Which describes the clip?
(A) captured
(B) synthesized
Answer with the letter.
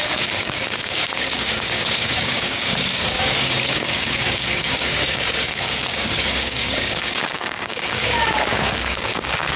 B